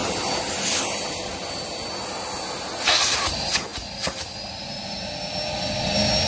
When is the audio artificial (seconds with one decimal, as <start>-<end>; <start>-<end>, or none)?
none